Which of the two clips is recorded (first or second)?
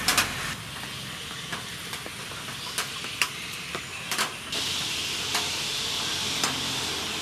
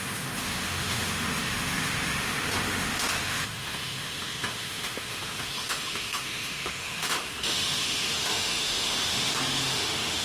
first